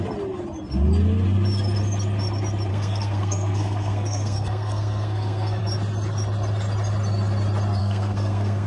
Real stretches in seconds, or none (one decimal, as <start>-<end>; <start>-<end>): 0.0-2.7; 5.6-7.8